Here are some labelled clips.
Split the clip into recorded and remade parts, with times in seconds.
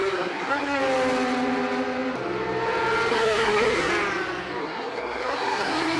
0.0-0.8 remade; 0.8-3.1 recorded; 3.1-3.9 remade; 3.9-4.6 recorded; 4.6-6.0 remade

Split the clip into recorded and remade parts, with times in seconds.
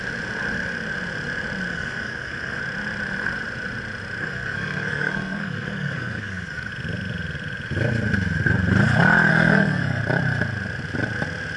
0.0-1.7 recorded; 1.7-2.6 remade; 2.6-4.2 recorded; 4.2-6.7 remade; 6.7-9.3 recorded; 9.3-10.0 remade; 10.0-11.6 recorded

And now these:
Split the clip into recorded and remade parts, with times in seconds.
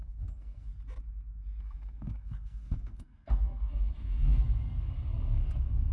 0.0-0.7 remade; 0.7-1.6 recorded; 1.6-5.9 remade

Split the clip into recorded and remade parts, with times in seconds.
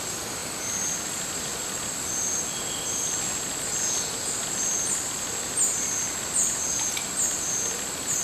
0.0-8.2 recorded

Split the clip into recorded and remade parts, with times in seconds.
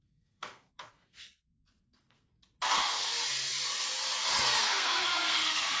0.0-2.3 remade; 2.3-2.8 recorded; 2.8-3.2 remade; 3.2-4.6 recorded; 4.6-5.8 remade